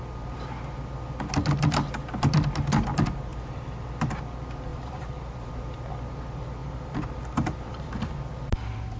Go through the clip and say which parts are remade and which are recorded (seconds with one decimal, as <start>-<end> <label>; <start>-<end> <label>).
0.0-3.3 recorded; 3.3-4.1 remade; 4.1-4.7 recorded; 4.7-5.5 remade; 5.5-6.6 recorded; 6.6-8.3 remade; 8.3-9.0 recorded